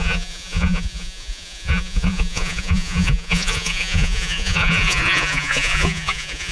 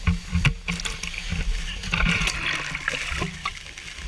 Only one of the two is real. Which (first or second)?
second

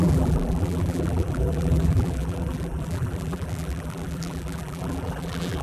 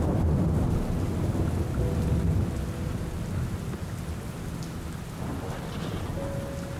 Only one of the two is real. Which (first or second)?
second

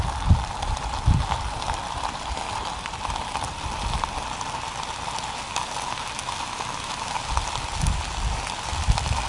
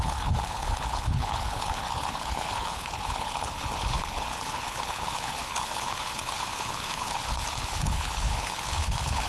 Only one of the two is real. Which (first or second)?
first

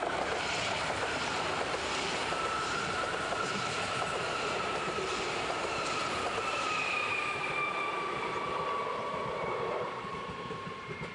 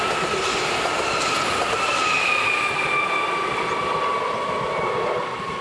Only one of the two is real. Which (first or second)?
second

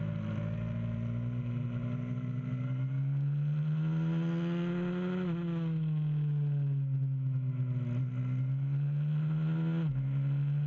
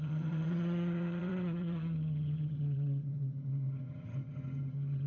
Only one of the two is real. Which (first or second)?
first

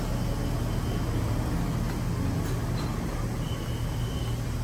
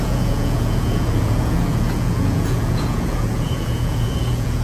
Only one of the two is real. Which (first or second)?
first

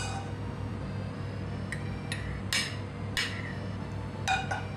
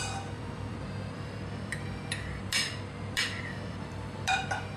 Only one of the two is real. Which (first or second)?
first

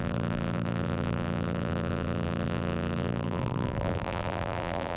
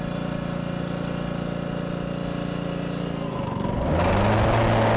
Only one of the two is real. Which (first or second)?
second